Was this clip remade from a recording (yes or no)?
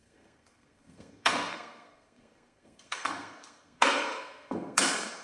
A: yes